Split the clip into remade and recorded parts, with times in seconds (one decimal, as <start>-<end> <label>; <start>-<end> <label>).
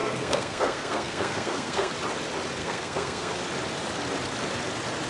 0.0-1.9 remade; 1.9-2.6 recorded; 2.6-3.3 remade; 3.3-5.1 recorded